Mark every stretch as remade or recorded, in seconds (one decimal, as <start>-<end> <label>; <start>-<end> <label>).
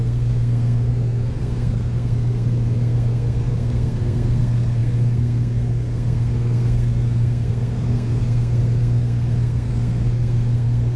0.0-11.0 remade